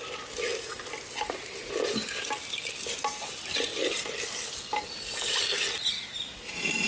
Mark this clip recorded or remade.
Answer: recorded